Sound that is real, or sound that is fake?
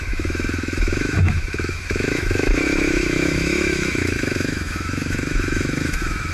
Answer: fake